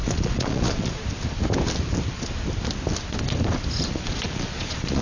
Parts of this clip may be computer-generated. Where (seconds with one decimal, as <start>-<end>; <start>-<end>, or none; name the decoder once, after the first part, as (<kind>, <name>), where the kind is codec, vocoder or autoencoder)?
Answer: 0.0-1.0 (vocoder, Vocos); 3.9-5.0